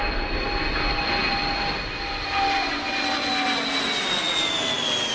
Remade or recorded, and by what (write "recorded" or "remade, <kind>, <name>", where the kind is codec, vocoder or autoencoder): recorded